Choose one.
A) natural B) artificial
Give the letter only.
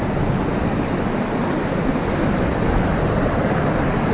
A